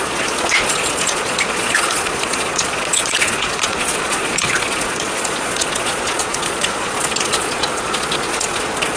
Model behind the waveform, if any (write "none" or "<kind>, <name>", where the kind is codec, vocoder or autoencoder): vocoder, Vocos